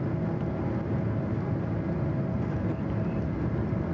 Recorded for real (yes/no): yes